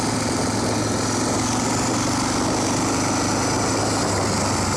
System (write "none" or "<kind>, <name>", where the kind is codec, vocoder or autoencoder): none